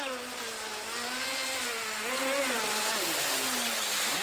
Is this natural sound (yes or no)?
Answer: yes